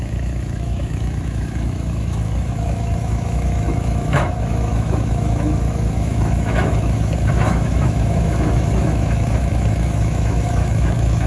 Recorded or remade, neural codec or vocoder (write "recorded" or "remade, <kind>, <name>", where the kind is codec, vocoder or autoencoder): remade, autoencoder, DAC-VAE